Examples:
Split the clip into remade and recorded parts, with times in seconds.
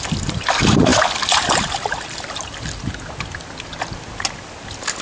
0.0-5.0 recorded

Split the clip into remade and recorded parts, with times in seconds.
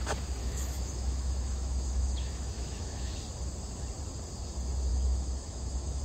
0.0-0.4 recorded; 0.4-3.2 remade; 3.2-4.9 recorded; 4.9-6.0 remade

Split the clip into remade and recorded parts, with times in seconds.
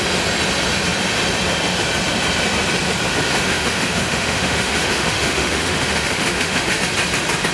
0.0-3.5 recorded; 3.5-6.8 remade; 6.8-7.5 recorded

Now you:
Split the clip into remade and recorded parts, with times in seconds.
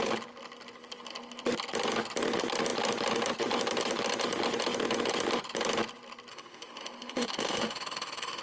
0.0-6.3 recorded; 6.3-8.4 remade